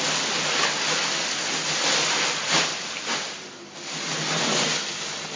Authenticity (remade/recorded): recorded